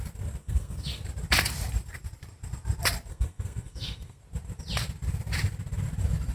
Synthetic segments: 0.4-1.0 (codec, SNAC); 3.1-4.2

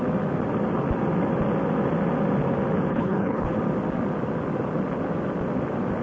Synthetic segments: 2.9-3.6 (codec, HILCodec)

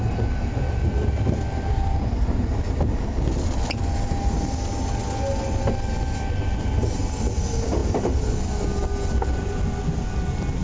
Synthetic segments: none

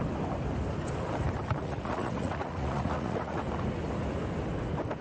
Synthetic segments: 1.6-3.4 (vocoder, Vocos)

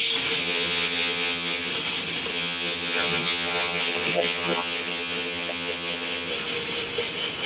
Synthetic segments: 0.4-1.7 (vocoder, HiFi-GAN); 2.3-6.3

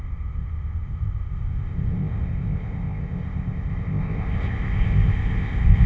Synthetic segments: 0.0-5.9 (codec, ZipCodec)